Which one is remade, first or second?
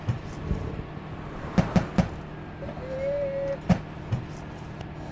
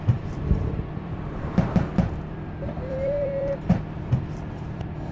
second